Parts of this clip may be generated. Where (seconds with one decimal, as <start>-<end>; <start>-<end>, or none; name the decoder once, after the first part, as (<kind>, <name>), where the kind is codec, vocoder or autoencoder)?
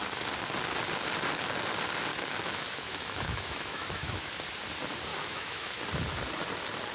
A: 2.1-4.3 (autoencoder, DAC-VAE); 5.1-5.8